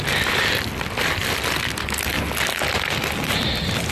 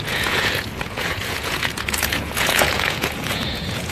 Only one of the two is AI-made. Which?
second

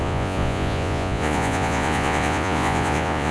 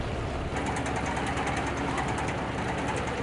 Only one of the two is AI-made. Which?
first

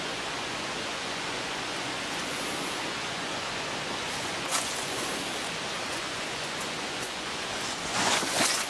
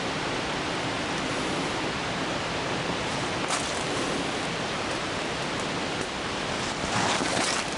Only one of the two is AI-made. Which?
first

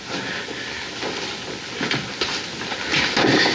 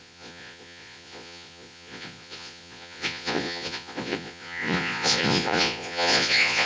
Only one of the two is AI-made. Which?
second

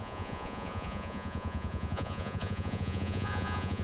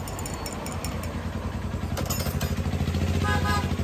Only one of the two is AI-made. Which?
first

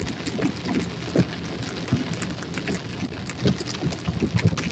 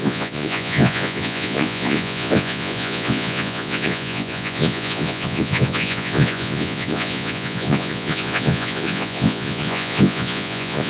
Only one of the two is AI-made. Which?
second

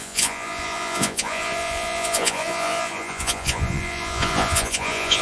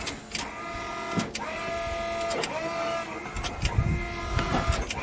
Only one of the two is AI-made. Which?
first